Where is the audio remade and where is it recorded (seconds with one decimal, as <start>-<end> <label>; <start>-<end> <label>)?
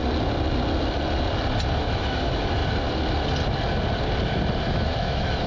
0.0-1.8 recorded; 1.8-2.6 remade; 2.6-4.7 recorded; 4.7-5.5 remade